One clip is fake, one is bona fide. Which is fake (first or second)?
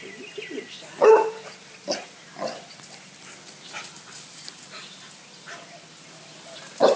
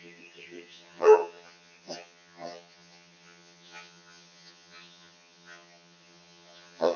second